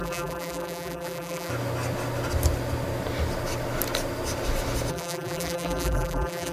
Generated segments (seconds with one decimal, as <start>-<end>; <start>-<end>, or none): 0.0-1.5; 4.9-6.5